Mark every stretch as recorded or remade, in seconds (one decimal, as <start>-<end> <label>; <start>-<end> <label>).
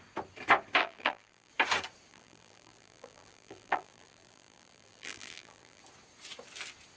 0.0-0.8 recorded; 0.8-1.5 remade; 1.5-2.1 recorded; 2.1-5.8 remade; 5.8-7.0 recorded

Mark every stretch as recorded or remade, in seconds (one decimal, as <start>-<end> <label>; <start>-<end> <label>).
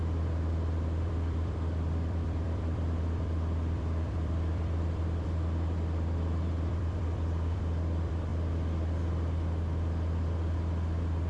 0.0-8.3 remade; 8.3-11.3 recorded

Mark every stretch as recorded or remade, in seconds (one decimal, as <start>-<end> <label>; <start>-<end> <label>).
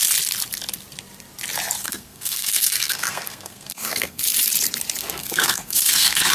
0.0-1.8 recorded; 1.8-4.2 remade; 4.2-5.0 recorded; 5.0-6.3 remade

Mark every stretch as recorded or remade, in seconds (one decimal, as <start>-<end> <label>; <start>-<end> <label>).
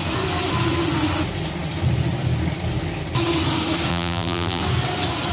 0.0-3.9 recorded; 3.9-4.6 remade; 4.6-5.3 recorded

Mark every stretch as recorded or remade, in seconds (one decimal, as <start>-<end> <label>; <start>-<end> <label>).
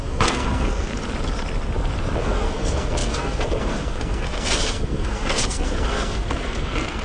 0.0-0.9 remade; 0.9-2.2 recorded; 2.2-7.0 remade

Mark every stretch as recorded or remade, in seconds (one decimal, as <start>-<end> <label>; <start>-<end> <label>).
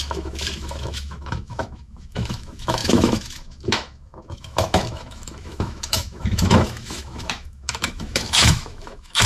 0.0-9.3 remade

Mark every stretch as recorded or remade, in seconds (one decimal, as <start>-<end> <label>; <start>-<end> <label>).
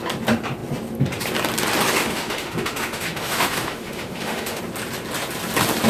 0.0-2.0 recorded; 2.0-4.6 remade; 4.6-5.9 recorded